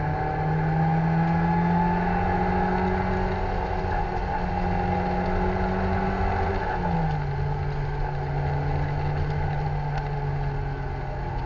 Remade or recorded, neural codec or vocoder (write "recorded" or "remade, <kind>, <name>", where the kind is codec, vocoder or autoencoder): recorded